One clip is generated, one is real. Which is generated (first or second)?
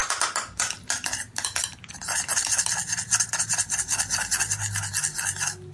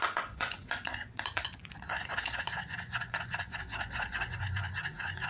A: second